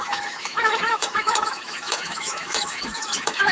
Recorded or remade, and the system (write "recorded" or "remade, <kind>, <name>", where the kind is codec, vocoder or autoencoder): remade, autoencoder, DAC-VAE